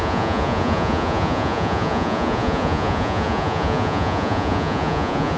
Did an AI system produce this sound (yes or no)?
yes